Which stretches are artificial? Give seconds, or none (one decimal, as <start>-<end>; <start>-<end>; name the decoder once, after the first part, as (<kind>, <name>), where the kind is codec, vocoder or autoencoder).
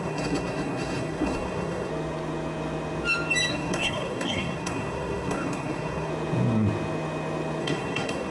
0.0-1.9 (codec, SNAC); 3.5-6.1; 7.6-8.3